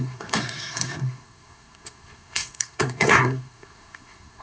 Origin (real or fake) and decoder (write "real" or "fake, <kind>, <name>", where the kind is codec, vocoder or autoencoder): fake, codec, SNAC